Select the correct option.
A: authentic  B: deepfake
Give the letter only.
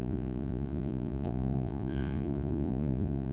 B